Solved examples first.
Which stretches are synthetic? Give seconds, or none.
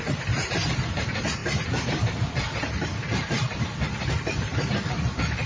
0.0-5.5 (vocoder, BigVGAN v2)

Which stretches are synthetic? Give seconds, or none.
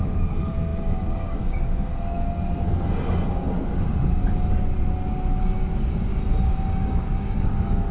0.0-1.9 (codec, DAC); 5.4-6.1; 6.7-7.9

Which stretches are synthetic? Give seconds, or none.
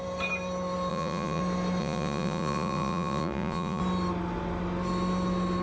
0.9-1.4 (vocoder, Vocos); 1.8-3.8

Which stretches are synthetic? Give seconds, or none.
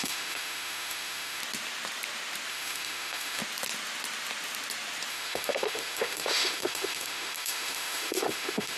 0.0-1.4 (autoencoder, DAC-VAE); 2.5-3.4; 5.1-8.8